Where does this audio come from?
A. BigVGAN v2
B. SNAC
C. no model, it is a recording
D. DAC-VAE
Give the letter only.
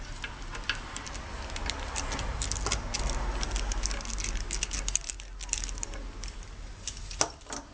C